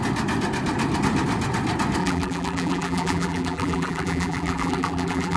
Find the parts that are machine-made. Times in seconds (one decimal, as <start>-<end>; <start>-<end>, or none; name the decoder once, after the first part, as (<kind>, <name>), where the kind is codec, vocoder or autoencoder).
2.0-5.4 (vocoder, BigVGAN v2)